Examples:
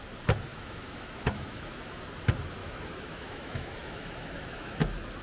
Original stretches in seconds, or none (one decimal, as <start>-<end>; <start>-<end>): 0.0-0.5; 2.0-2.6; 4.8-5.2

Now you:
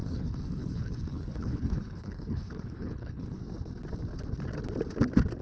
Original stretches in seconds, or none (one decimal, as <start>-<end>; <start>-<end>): 3.4-5.4

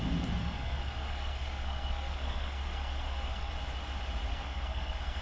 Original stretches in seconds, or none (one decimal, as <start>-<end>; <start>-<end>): 0.0-0.4; 3.5-4.3